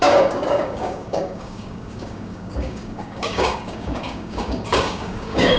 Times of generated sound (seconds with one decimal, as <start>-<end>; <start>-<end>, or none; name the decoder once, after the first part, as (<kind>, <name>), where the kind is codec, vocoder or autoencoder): 0.0-5.6 (codec, DAC)